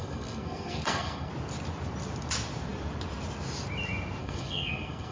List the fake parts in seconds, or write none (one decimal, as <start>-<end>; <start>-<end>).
0.0-1.3; 4.2-5.1